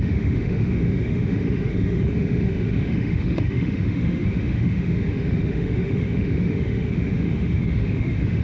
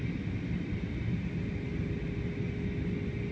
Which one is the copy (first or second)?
first